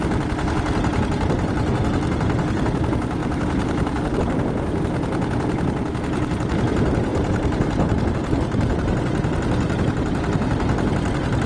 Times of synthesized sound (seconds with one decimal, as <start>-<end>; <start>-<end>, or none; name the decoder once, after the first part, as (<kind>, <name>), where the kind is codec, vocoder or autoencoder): 3.2-4.2 (vocoder, BigVGAN v2)